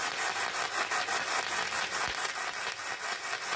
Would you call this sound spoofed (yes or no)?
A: no